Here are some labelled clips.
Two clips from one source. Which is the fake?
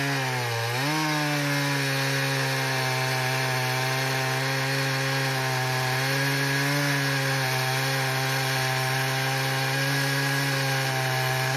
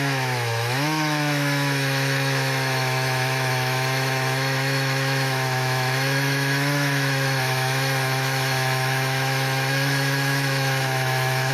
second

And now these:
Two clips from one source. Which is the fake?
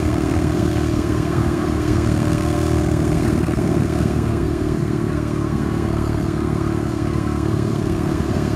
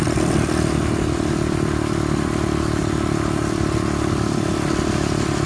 first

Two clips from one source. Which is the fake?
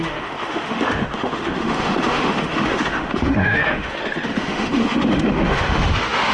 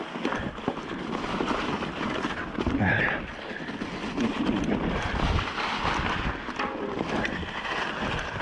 first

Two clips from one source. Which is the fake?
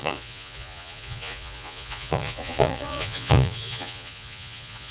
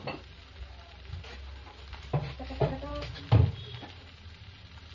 first